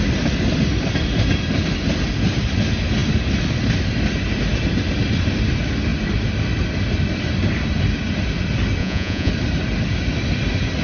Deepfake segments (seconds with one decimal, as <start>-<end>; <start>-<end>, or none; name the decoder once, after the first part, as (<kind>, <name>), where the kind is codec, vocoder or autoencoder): 8.8-9.3 (vocoder, Vocos)